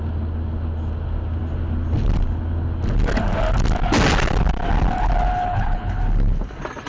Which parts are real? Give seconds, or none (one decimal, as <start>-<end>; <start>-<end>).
0.0-5.4; 6.0-6.9